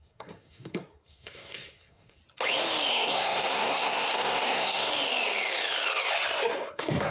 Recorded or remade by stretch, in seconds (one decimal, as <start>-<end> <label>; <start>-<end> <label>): 0.0-2.2 remade; 2.2-2.9 recorded; 2.9-4.9 remade; 4.9-6.1 recorded; 6.1-7.1 remade